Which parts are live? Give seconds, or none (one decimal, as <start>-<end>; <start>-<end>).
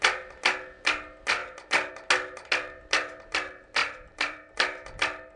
0.0-3.8; 4.5-5.4